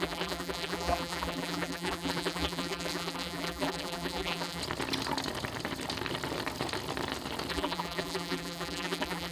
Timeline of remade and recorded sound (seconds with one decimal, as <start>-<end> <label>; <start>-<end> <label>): 0.0-4.6 remade; 4.6-7.5 recorded; 7.5-9.3 remade